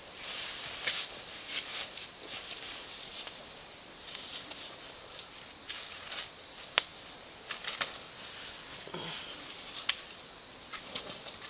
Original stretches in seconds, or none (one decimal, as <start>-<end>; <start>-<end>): 6.9-10.5